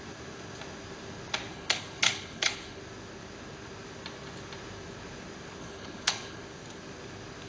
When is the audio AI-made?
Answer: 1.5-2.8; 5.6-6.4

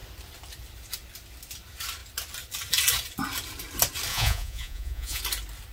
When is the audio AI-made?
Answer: 4.1-5.2

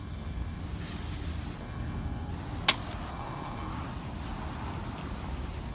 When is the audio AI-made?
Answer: 0.0-0.6; 1.6-2.3; 3.1-3.7